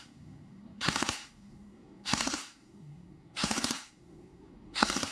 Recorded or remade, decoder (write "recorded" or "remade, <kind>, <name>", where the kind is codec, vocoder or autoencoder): remade, codec, SNAC